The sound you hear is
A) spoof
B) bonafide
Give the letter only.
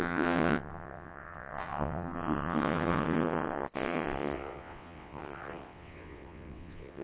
A